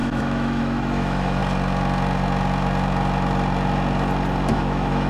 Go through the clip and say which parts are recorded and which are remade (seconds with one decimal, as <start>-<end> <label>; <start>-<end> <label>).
0.0-1.4 remade; 1.4-4.5 recorded; 4.5-5.1 remade

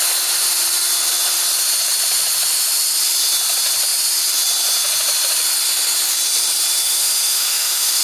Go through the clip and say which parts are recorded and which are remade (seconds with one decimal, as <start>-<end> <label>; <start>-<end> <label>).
0.0-6.8 recorded; 6.8-8.0 remade

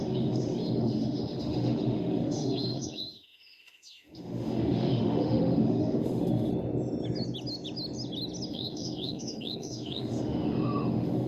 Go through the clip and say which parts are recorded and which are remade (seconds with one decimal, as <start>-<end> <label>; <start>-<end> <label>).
0.0-6.5 remade; 6.5-8.5 recorded; 8.5-11.3 remade

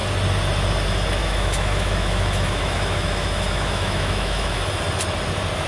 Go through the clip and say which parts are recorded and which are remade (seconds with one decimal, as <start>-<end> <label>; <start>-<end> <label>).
0.0-1.2 recorded; 1.2-4.6 remade; 4.6-5.7 recorded

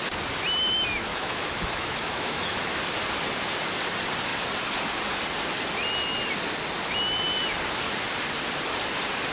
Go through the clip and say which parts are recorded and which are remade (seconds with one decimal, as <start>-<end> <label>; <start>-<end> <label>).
0.0-1.1 recorded; 1.1-2.8 remade; 2.8-9.3 recorded

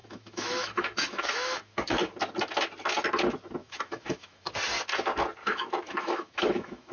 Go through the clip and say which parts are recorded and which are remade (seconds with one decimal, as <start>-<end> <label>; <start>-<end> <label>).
0.0-2.1 remade; 2.1-3.6 recorded; 3.6-4.5 remade; 4.5-5.4 recorded; 5.4-6.9 remade